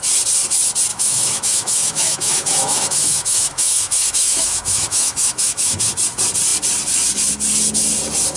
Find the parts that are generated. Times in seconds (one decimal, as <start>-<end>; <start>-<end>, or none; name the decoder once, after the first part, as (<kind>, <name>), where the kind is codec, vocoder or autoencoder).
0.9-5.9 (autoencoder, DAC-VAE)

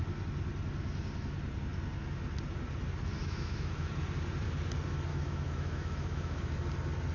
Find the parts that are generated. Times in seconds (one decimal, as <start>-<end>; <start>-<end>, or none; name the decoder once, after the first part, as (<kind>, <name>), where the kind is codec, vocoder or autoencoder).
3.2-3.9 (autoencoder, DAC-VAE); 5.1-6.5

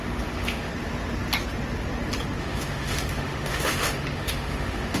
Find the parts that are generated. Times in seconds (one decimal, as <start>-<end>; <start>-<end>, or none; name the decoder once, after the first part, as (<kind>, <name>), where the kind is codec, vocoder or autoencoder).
0.0-0.7 (autoencoder, DAC-VAE); 2.4-5.0

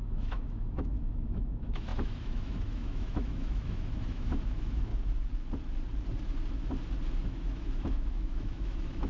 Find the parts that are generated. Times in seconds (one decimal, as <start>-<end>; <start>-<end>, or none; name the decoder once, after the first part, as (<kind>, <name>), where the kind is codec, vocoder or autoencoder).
0.0-4.9 (autoencoder, DAC-VAE); 7.2-9.1

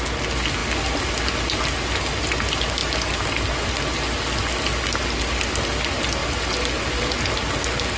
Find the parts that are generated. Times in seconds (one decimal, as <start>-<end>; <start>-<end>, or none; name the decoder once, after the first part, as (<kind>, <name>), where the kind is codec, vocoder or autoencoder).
none

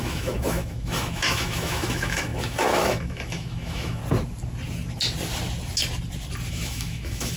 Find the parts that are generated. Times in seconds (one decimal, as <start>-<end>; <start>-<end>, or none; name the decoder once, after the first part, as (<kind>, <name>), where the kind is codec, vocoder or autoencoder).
0.0-4.0 (autoencoder, DAC-VAE); 6.5-7.4